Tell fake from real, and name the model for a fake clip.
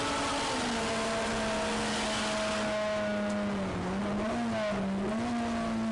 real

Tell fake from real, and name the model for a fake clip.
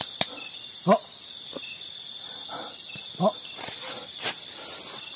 real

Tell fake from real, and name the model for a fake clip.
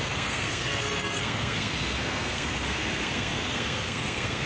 fake, codec, SNAC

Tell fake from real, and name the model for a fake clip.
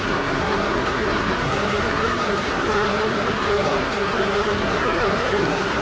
fake, codec, SNAC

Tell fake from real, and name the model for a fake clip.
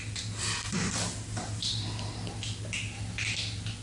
real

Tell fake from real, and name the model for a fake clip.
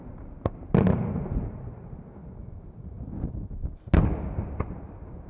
real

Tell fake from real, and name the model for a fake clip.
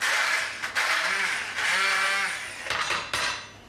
real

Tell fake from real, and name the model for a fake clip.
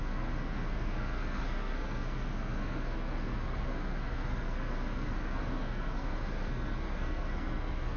fake, codec, SNAC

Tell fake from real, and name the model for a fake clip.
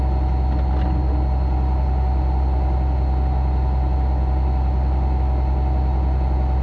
real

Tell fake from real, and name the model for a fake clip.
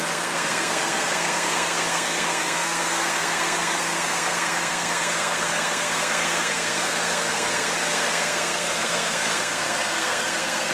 fake, codec, SNAC